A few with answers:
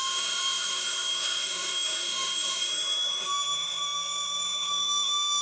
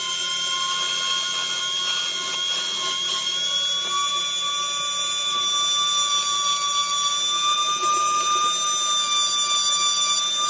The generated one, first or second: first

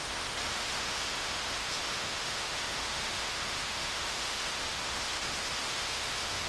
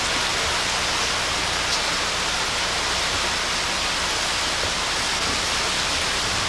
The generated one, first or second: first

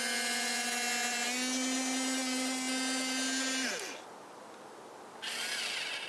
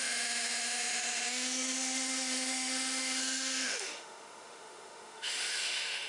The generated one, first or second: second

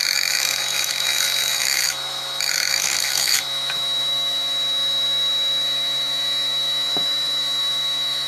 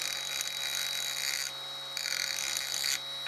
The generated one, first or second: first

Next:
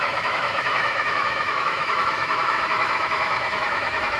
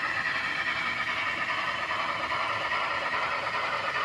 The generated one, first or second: first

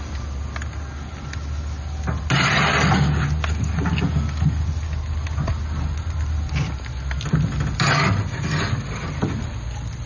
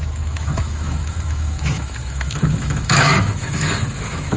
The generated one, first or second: second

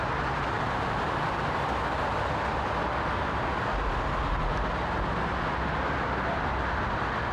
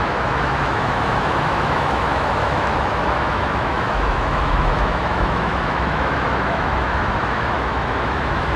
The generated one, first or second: second